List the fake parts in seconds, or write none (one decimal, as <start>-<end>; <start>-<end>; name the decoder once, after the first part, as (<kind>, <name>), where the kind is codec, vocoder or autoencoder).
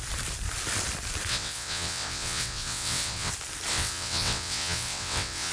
1.3-3.3 (vocoder, WaveNeXt); 3.7-5.5